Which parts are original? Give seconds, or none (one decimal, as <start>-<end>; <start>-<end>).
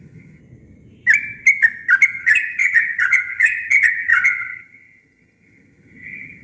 0.4-2.2